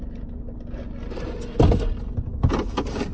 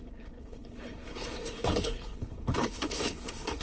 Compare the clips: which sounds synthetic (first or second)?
second